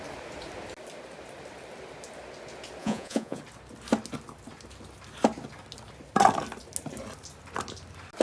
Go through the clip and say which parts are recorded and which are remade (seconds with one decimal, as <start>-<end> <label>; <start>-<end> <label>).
0.0-2.8 recorded; 2.8-3.4 remade; 3.4-8.2 recorded